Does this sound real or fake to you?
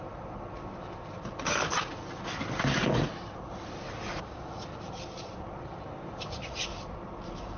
real